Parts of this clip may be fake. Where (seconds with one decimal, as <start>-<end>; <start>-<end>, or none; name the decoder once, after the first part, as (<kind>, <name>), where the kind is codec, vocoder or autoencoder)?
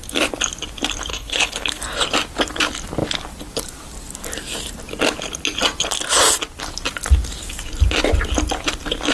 1.1-1.8 (codec, HILCodec)